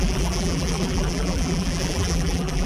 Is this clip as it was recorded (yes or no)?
no